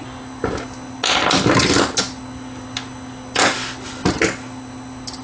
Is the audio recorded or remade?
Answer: recorded